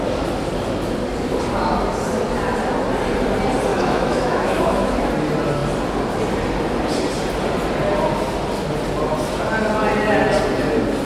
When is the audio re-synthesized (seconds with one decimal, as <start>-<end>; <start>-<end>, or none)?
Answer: 3.7-5.1